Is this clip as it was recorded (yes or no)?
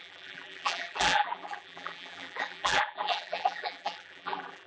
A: no